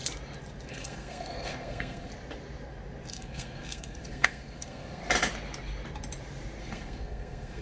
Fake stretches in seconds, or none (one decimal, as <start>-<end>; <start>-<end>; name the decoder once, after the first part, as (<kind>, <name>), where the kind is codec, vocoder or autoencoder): 0.7-2.1 (codec, SNAC); 3.1-5.0; 6.6-7.6